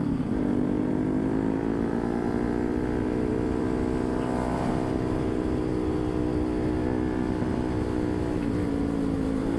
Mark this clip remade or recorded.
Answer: recorded